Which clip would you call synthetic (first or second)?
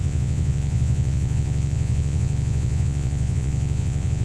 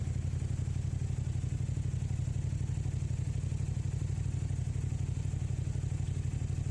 first